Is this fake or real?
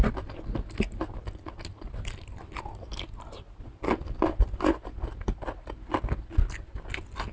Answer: real